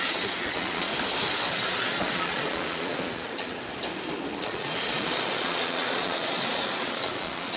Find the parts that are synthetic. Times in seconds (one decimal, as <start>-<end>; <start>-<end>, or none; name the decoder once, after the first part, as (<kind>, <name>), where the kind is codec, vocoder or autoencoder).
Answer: 0.0-0.9 (vocoder, Vocos); 1.5-3.6; 4.3-7.6